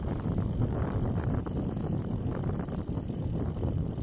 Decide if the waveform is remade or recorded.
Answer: recorded